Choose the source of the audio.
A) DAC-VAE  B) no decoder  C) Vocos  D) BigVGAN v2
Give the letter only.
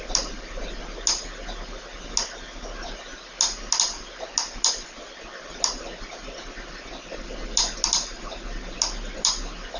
B